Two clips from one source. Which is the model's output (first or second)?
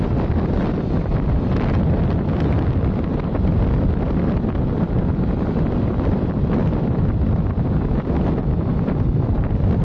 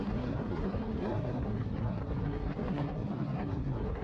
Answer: second